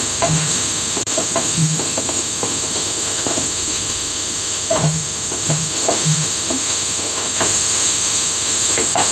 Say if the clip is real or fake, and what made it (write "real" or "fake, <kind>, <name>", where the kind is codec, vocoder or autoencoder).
fake, autoencoder, DAC-VAE